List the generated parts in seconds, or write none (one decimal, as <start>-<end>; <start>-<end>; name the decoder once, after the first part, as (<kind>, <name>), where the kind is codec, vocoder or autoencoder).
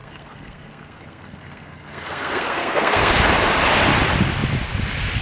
0.0-3.1 (codec, SNAC)